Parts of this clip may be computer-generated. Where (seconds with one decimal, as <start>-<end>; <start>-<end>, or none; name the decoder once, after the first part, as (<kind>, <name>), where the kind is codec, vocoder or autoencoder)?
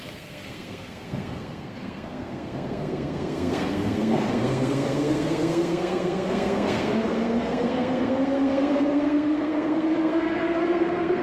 0.0-11.2 (codec, SNAC)